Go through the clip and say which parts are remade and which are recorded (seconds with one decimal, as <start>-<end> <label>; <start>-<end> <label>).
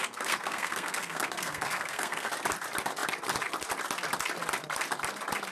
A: 0.0-2.3 remade; 2.3-5.5 recorded